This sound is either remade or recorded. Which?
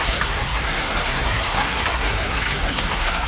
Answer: remade